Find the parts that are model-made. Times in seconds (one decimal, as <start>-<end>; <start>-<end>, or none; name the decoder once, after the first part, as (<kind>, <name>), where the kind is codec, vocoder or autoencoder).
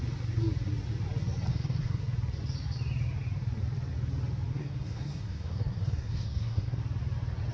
1.5-2.0 (codec, SNAC); 4.5-6.8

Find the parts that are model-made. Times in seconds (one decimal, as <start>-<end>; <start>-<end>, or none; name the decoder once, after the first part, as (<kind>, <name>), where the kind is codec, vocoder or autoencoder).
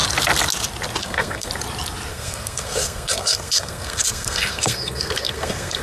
1.0-1.5 (codec, SNAC); 2.1-5.8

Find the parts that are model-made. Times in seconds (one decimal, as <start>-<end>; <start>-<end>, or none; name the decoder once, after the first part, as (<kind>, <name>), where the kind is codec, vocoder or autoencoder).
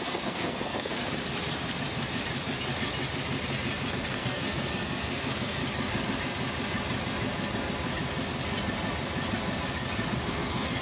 0.0-1.0 (codec, SNAC); 3.9-5.6; 10.3-10.8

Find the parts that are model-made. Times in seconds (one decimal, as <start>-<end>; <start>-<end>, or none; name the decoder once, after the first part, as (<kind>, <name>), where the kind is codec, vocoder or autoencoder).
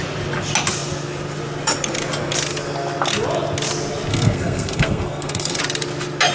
4.1-5.6 (codec, SNAC)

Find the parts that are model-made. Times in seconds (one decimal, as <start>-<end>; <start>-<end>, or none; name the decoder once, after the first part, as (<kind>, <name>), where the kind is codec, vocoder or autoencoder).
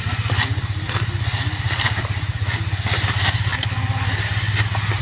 none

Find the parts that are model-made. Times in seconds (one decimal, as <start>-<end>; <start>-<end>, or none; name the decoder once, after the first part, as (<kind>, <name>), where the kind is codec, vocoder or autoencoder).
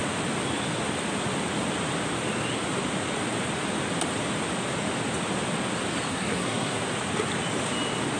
6.1-6.9 (codec, SNAC)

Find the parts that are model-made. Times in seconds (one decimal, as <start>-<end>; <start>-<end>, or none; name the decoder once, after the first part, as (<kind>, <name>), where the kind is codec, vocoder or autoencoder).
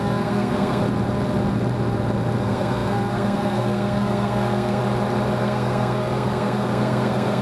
0.0-0.8 (codec, SNAC); 2.4-4.8; 5.4-7.4